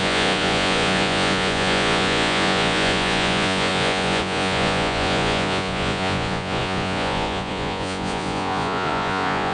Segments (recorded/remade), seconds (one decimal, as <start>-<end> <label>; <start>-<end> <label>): 0.0-9.5 remade